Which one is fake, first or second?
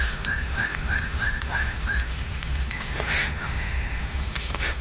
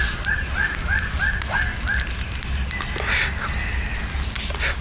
first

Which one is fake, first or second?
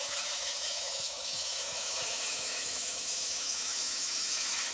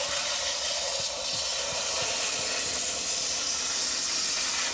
first